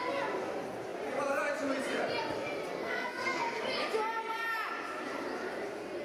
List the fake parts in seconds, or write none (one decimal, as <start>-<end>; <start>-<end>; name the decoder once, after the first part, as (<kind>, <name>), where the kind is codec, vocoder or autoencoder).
2.8-3.6 (codec, SNAC)